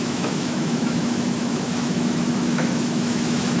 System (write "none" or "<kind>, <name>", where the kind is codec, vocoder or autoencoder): autoencoder, DAC-VAE